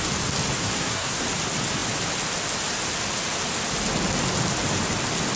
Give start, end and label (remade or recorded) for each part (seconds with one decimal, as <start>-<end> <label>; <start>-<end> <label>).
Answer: 0.0-0.6 recorded; 0.6-1.2 remade; 1.2-5.4 recorded